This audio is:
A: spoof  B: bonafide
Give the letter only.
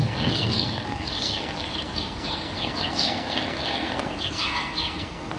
A